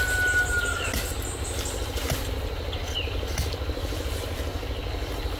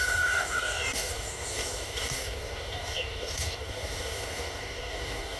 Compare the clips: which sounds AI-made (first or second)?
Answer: second